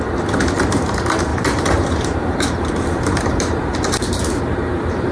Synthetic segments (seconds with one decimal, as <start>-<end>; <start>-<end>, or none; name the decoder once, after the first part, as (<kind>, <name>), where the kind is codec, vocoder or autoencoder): 1.3-4.4 (vocoder, BigVGAN v2)